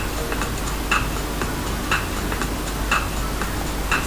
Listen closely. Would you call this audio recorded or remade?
recorded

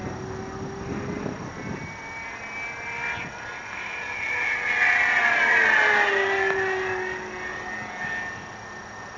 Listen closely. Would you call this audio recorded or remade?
recorded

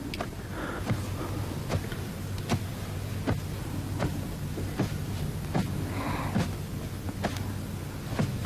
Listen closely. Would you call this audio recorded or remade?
recorded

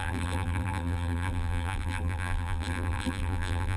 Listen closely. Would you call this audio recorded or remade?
remade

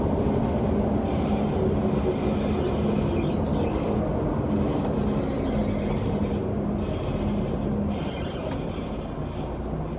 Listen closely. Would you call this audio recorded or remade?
recorded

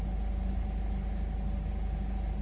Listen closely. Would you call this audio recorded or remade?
recorded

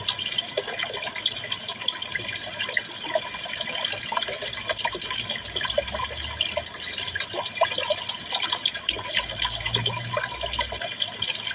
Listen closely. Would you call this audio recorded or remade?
recorded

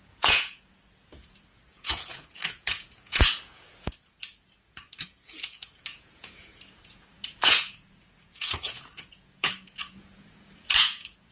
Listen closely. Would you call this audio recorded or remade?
remade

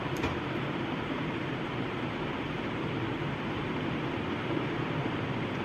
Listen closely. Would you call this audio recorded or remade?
remade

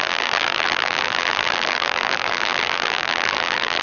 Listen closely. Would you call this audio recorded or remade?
remade